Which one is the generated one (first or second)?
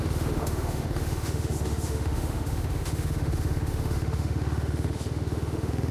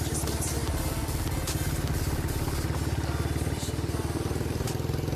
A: first